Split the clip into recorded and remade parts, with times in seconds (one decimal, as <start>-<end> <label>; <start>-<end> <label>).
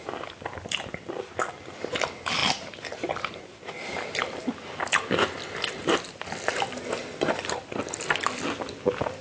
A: 0.0-9.2 recorded